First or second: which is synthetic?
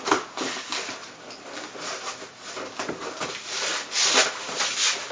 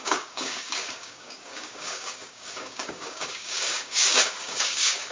second